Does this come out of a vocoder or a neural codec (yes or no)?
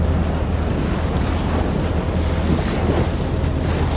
no